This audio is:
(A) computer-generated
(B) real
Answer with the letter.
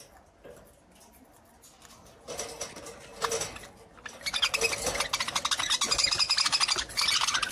B